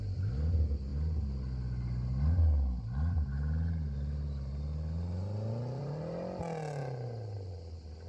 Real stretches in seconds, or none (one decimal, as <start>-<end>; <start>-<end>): 0.0-8.1

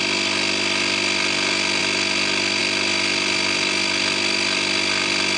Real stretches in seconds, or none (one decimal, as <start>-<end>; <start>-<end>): 0.0-5.4

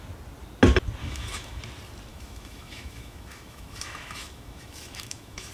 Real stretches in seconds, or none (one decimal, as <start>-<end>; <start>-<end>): 0.0-1.0; 1.6-2.1

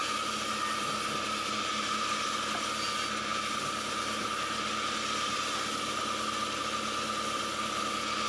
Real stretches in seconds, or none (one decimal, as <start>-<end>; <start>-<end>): 0.0-8.3